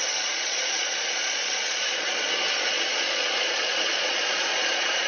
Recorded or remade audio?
remade